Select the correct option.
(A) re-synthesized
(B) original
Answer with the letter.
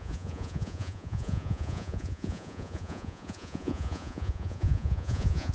A